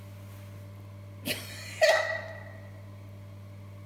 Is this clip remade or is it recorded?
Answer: recorded